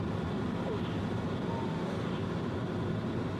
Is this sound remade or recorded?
recorded